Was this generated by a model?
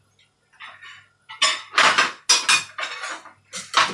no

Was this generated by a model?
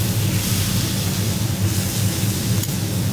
no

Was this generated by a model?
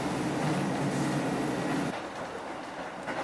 no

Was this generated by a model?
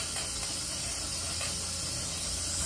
no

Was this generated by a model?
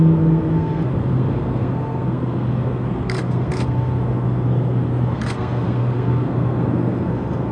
yes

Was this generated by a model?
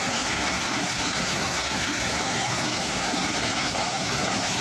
yes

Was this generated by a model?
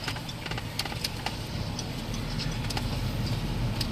no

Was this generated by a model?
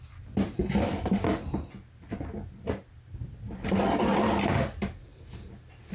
no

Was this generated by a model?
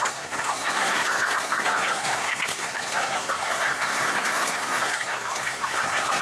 yes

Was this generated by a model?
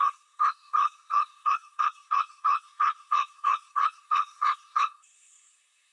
yes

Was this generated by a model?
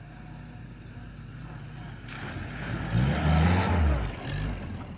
no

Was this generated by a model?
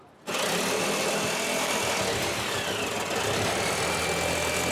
no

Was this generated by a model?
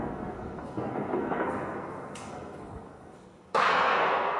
yes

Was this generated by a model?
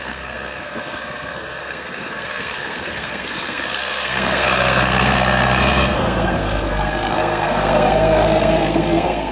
yes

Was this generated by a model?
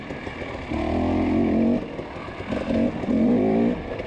no